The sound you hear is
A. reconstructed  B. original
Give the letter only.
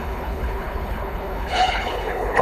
A